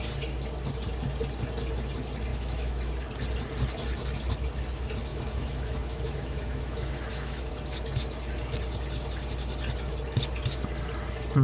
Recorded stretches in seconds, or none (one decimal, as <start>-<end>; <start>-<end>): 0.0-2.3; 2.9-5.1; 7.5-11.4